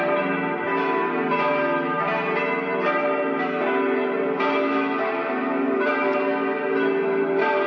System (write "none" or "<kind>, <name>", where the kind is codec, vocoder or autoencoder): none